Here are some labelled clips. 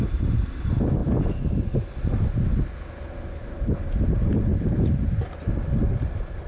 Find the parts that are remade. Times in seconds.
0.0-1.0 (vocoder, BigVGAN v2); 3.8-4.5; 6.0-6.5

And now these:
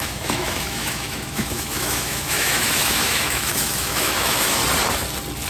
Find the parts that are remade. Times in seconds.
0.0-4.6 (autoencoder, DAC-VAE)